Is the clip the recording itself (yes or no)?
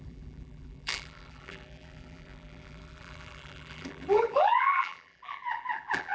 no